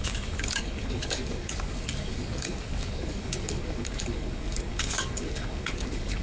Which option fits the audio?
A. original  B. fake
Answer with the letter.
B